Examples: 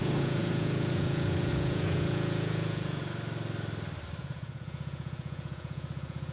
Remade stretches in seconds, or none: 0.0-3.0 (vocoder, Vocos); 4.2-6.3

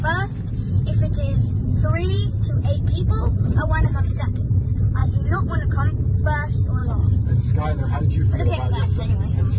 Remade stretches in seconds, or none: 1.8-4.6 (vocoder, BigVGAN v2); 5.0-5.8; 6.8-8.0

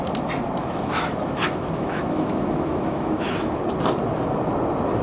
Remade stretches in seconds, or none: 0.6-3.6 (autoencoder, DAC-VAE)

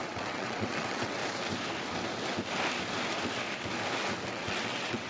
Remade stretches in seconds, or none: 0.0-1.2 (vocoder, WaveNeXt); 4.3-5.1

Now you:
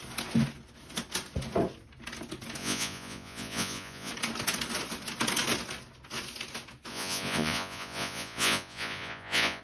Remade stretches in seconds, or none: 2.6-4.1 (vocoder, Vocos); 6.9-9.6

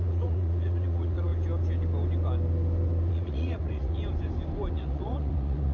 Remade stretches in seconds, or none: 0.0-1.3 (vocoder, Vocos); 3.1-4.0; 4.7-5.7